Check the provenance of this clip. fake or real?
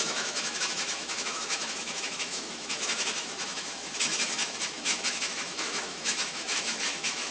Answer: fake